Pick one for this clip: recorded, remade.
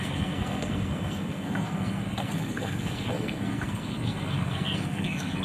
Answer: remade